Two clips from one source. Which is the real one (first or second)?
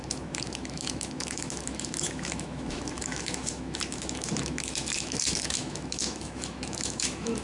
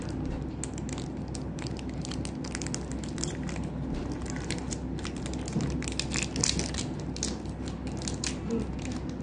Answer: second